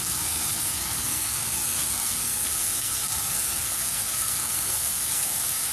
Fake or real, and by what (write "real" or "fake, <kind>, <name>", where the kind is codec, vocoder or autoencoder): fake, codec, SNAC